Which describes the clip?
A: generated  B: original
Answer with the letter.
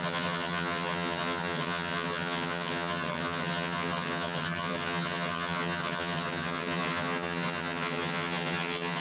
A